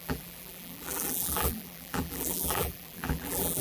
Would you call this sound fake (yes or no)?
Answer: yes